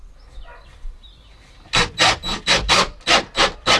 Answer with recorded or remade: recorded